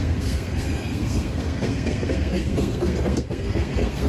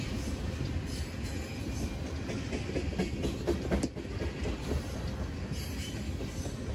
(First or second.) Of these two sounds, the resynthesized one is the first